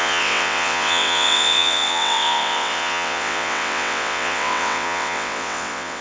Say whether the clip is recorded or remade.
remade